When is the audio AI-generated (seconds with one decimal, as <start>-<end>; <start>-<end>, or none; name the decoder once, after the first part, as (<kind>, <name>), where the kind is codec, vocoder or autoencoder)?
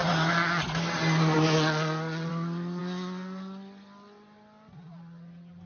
none